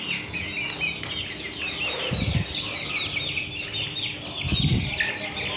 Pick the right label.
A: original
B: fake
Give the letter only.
A